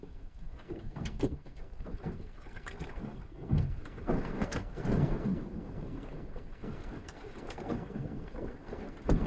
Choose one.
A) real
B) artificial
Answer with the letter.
B